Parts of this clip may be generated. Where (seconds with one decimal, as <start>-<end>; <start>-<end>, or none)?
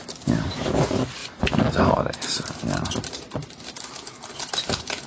none